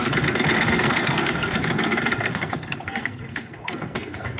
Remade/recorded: remade